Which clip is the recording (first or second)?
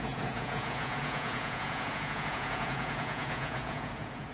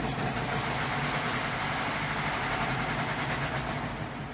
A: second